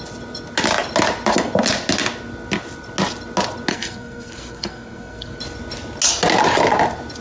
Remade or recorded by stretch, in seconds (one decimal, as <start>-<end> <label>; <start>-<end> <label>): 0.0-3.7 recorded; 3.7-5.4 remade; 5.4-7.2 recorded